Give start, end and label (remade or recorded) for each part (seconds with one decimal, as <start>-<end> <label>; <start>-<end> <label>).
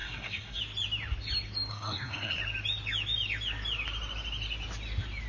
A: 0.0-0.6 remade; 0.6-1.7 recorded; 1.7-2.4 remade; 2.4-5.3 recorded